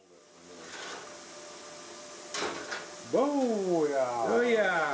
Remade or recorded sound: recorded